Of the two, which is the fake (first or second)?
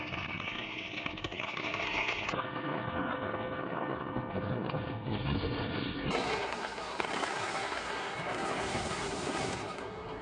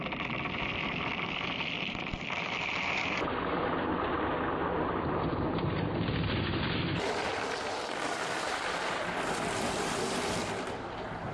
first